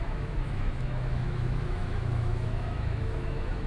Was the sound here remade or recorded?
remade